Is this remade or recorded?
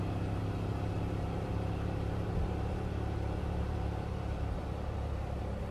remade